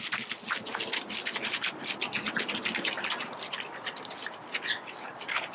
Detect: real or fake real